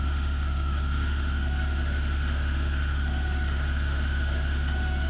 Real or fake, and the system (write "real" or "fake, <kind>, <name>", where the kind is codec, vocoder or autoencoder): fake, autoencoder, DAC-VAE